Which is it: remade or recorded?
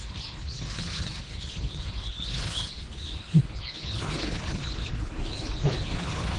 remade